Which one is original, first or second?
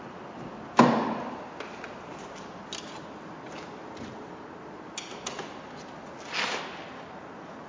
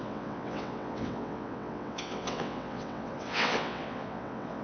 first